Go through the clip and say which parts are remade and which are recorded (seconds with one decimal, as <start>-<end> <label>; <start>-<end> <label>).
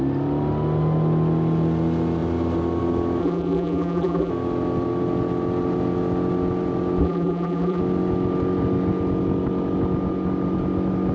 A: 0.0-3.2 recorded; 3.2-4.3 remade; 4.3-7.0 recorded; 7.0-7.8 remade; 7.8-11.1 recorded